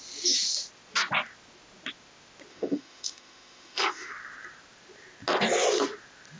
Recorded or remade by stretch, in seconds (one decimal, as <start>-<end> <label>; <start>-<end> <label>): 0.0-2.5 recorded; 2.5-4.1 remade; 4.1-6.4 recorded